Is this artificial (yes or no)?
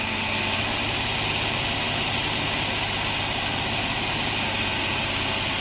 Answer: no